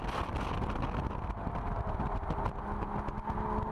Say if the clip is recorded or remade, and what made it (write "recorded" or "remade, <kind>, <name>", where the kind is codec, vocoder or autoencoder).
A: recorded